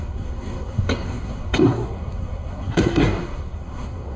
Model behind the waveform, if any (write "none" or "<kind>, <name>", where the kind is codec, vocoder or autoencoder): codec, SNAC